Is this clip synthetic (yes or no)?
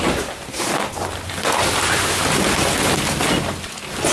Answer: no